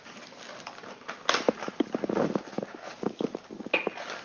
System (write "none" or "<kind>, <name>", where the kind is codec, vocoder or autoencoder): none